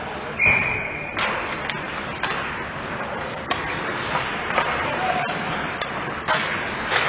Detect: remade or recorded recorded